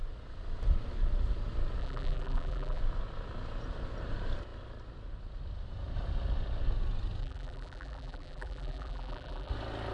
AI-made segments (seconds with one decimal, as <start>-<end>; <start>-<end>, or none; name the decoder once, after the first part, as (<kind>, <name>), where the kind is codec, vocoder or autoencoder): 1.8-2.8 (vocoder, BigVGAN v2); 7.2-9.5